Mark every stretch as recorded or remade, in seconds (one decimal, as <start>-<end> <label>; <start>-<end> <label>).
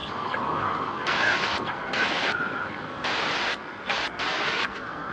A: 0.0-3.1 remade; 3.1-3.5 recorded; 3.5-5.1 remade